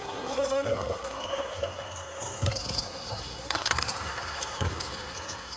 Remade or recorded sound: remade